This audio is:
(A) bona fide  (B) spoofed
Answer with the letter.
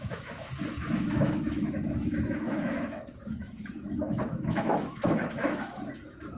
B